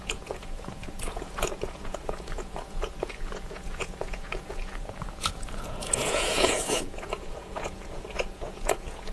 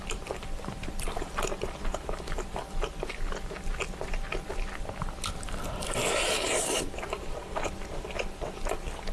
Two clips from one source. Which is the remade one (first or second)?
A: first